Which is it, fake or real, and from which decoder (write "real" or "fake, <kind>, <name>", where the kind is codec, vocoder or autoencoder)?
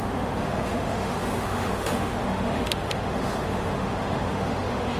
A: fake, autoencoder, DAC-VAE